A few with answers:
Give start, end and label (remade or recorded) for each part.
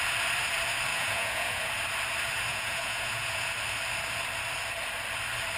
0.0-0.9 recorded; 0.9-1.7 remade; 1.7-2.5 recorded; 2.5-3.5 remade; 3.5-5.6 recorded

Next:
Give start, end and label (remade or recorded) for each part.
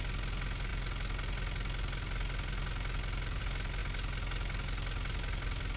0.0-5.8 recorded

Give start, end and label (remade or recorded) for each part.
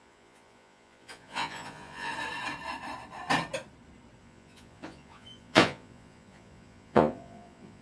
0.0-2.1 remade; 2.1-4.2 recorded; 4.2-7.8 remade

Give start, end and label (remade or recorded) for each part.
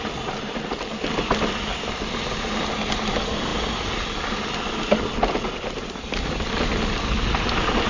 0.0-7.9 recorded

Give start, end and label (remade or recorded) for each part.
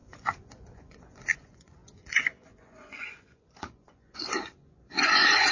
0.0-5.5 remade